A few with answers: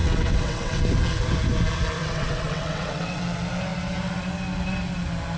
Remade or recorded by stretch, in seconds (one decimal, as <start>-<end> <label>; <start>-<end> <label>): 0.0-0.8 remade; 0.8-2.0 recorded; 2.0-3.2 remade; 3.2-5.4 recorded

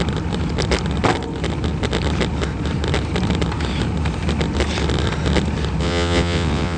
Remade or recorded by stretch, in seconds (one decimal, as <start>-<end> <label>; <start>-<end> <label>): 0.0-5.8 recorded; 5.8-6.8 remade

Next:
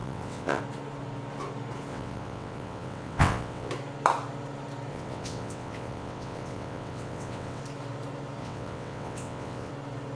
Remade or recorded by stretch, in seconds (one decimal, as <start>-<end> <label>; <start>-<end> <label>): 0.0-0.6 remade; 0.6-1.9 recorded; 1.9-3.7 remade; 3.7-4.9 recorded; 4.9-7.6 remade; 7.6-8.4 recorded; 8.4-9.7 remade; 9.7-10.2 recorded